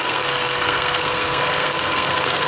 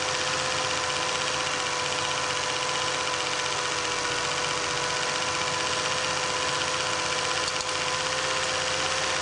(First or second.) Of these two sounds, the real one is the second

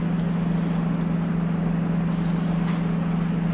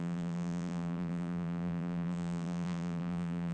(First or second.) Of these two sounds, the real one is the first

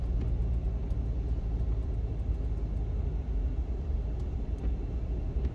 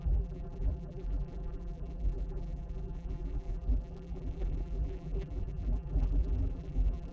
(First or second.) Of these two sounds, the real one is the first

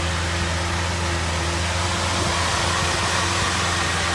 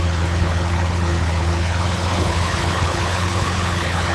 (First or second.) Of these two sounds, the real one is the first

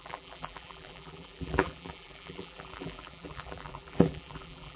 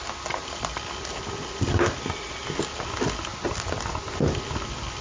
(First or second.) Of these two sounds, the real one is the second